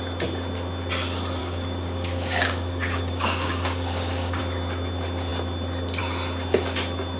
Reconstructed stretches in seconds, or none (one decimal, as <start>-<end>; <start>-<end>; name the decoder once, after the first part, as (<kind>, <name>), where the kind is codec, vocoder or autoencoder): 1.4-4.4 (codec, DAC)